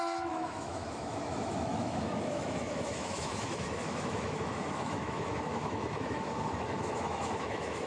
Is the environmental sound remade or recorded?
remade